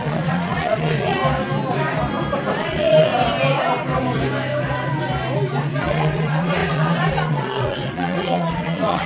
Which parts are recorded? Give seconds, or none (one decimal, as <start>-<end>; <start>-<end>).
1.2-2.6; 3.1-5.8